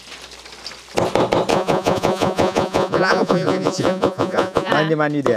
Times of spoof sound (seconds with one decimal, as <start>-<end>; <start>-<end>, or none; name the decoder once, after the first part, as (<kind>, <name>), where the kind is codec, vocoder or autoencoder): 1.5-4.7 (vocoder, Vocos)